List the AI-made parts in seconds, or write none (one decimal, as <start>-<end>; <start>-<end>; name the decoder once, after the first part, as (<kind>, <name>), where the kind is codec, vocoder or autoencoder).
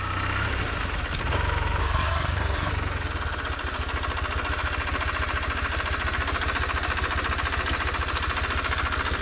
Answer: 1.8-2.7 (codec, SNAC)